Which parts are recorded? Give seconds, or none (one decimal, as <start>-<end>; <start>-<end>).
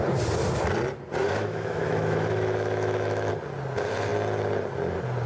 0.0-1.2; 3.3-5.3